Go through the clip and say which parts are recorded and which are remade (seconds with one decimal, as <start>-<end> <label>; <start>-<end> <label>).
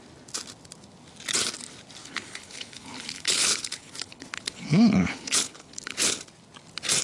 0.0-2.0 recorded; 2.0-6.2 remade; 6.2-7.0 recorded